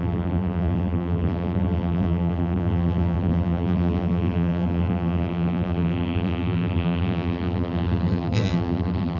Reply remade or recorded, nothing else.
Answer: remade